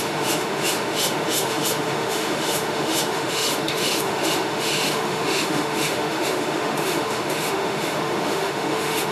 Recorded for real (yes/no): no